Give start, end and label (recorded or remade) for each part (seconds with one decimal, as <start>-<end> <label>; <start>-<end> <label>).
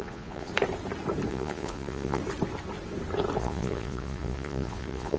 0.0-0.5 remade; 0.5-1.3 recorded; 1.3-2.2 remade; 2.2-3.4 recorded; 3.4-5.2 remade